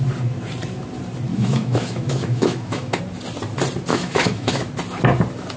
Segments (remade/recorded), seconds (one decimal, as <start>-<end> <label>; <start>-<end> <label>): 0.0-1.3 recorded; 1.3-3.0 remade; 3.0-3.9 recorded; 3.9-4.7 remade; 4.7-5.6 recorded